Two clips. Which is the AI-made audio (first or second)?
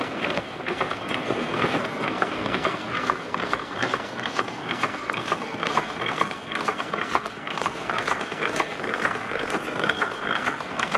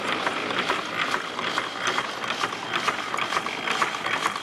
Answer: first